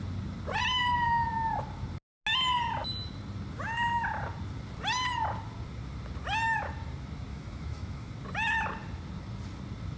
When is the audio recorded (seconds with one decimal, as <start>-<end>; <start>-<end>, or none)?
0.0-7.3; 8.1-10.0